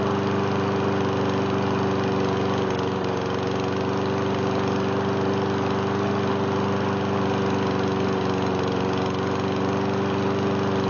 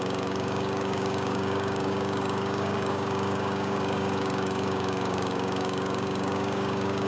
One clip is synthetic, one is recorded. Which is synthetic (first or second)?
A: second